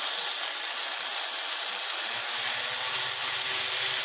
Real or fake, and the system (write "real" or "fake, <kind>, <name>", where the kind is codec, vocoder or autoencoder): real